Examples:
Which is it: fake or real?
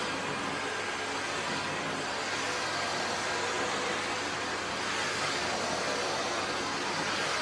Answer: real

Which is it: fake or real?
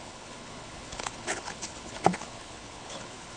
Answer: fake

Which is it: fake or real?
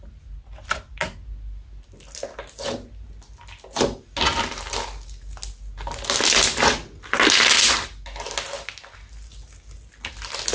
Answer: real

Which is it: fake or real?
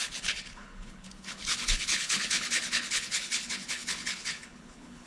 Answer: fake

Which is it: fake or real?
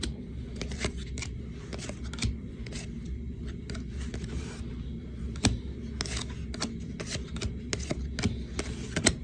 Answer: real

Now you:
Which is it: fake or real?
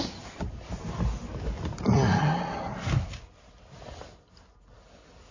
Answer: real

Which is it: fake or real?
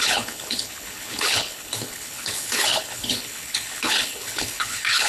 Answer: fake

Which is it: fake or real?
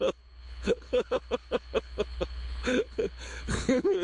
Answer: fake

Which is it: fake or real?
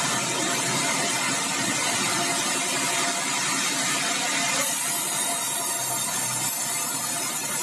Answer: real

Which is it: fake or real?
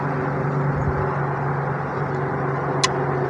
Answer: real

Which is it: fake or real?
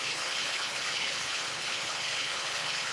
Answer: fake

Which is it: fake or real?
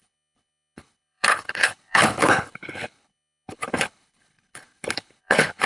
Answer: fake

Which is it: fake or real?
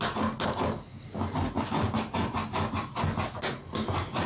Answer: real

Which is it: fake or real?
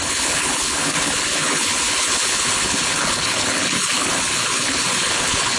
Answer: fake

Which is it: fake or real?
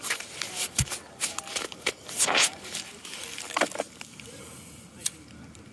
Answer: real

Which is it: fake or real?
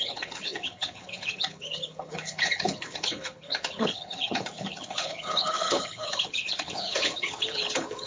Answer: fake